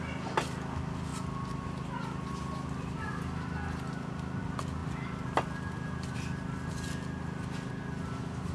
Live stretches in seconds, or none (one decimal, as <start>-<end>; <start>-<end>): 0.0-8.5